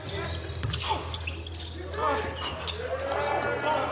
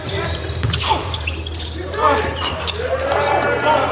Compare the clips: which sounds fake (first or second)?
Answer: second